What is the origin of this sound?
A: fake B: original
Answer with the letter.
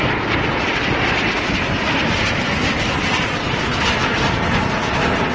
B